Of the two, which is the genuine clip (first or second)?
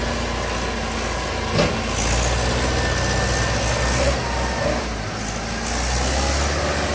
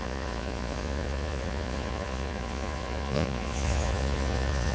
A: first